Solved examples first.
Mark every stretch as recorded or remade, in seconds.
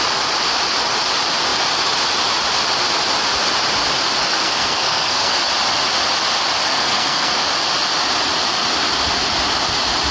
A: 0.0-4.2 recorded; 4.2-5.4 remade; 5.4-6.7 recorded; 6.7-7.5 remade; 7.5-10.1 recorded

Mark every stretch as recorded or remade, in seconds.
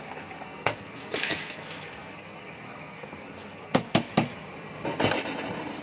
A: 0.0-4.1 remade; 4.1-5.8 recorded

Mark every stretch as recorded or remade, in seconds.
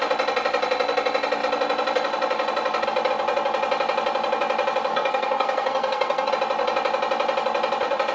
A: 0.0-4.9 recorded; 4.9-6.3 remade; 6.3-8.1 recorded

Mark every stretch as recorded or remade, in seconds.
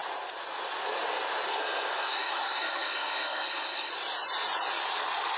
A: 0.0-1.5 recorded; 1.5-3.9 remade; 3.9-5.4 recorded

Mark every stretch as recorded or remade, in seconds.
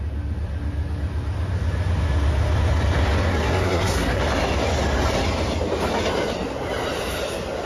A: 0.0-3.3 recorded; 3.3-4.2 remade; 4.2-7.7 recorded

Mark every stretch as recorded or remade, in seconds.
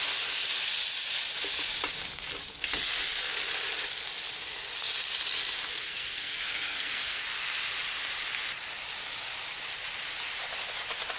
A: 0.0-5.7 recorded; 5.7-7.2 remade; 7.2-11.2 recorded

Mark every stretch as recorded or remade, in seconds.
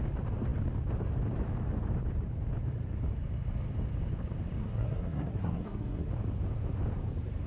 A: 0.0-4.6 recorded; 4.6-6.1 remade; 6.1-7.5 recorded